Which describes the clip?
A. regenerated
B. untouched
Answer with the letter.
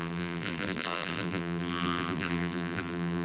A